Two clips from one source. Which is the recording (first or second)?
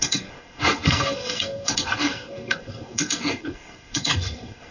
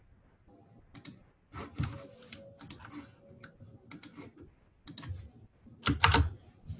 second